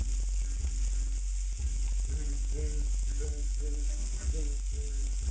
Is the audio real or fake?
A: real